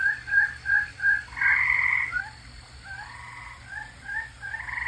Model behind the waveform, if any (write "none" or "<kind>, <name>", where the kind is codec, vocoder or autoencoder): none